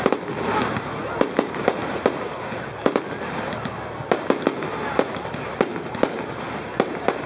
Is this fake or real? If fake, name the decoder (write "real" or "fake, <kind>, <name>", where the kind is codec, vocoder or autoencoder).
real